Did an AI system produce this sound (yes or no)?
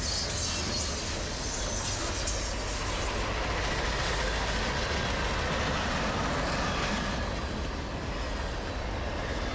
no